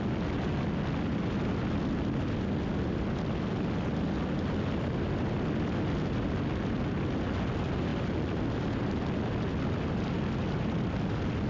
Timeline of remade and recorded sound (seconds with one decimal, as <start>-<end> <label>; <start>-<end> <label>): 0.0-11.5 recorded